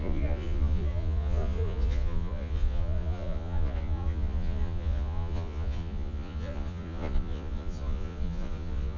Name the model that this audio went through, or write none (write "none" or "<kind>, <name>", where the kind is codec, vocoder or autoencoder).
vocoder, Vocos